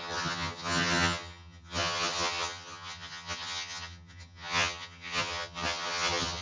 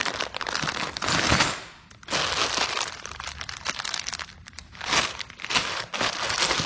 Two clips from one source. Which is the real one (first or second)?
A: second